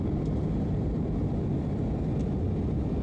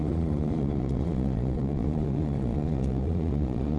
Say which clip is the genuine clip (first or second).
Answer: first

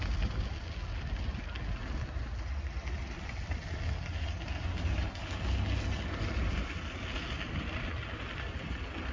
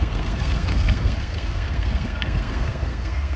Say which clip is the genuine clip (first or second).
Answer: first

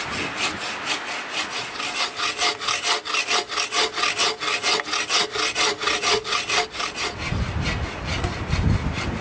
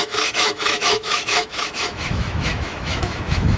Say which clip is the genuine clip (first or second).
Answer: first